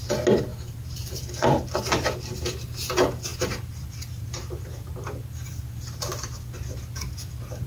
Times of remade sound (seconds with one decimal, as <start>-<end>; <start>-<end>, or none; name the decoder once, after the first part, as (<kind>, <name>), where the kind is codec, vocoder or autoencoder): 0.5-1.7 (vocoder, BigVGAN v2); 3.3-6.4